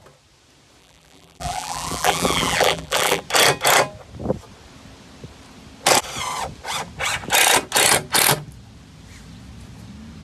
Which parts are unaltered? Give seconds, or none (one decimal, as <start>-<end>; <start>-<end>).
0.0-0.8; 3.2-10.2